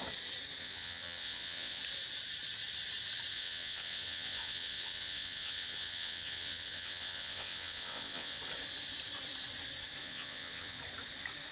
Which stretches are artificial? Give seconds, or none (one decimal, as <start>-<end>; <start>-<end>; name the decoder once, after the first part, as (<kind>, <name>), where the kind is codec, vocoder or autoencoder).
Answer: 0.6-1.8 (vocoder, WaveNeXt); 3.3-8.4; 10.0-10.8